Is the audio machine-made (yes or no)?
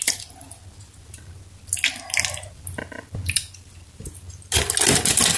no